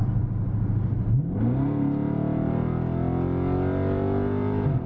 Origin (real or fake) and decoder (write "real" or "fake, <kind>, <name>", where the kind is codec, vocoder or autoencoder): real